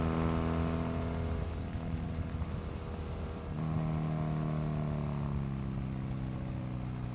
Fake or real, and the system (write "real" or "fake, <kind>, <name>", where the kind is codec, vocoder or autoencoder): real